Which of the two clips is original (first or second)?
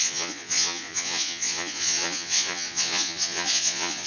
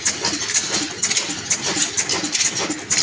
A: second